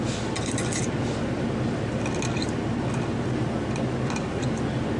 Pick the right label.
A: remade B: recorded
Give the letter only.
B